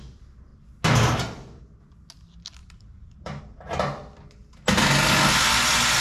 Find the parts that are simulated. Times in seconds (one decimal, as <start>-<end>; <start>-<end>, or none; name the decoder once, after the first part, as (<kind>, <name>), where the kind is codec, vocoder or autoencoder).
2.6-3.4 (vocoder, BigVGAN v2)